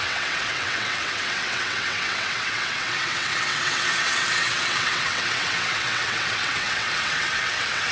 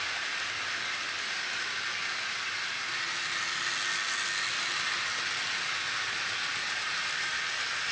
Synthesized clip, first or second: first